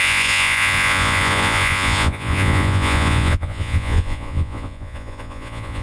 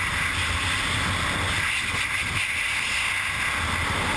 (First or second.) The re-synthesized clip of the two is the first